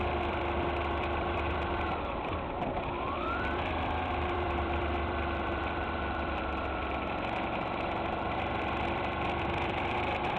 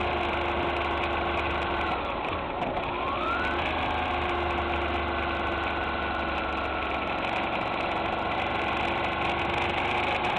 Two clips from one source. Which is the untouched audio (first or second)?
second